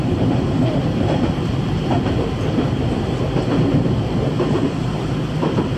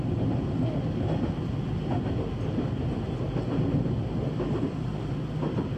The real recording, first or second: second